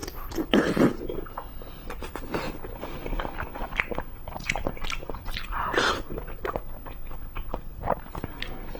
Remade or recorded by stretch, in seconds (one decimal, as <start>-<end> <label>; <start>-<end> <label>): 0.0-8.8 recorded